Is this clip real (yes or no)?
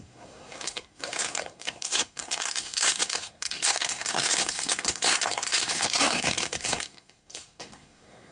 no